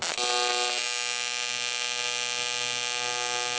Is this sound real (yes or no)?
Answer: yes